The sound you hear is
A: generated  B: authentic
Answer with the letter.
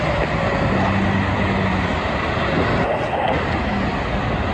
B